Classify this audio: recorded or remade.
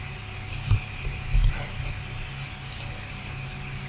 recorded